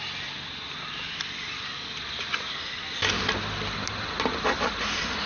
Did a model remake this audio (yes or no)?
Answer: no